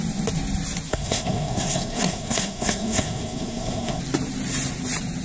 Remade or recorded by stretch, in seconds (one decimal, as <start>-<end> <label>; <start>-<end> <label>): 0.0-0.9 recorded; 0.9-4.0 remade; 4.0-5.2 recorded